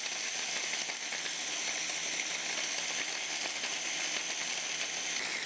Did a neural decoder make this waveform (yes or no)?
no